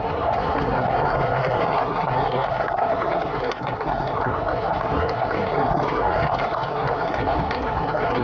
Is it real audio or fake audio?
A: fake